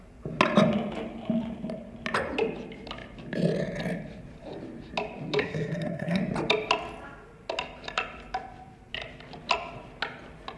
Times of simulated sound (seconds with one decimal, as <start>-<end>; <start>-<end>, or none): 5.4-6.2